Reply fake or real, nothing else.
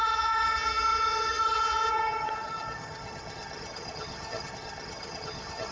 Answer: fake